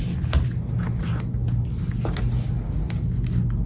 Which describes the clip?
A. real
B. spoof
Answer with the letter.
A